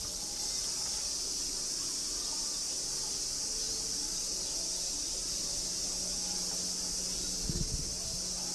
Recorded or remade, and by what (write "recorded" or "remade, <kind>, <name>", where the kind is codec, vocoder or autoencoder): recorded